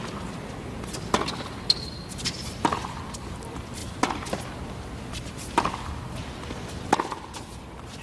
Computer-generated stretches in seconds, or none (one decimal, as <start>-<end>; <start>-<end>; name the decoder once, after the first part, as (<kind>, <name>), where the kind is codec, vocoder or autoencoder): 2.4-3.3 (vocoder, BigVGAN v2)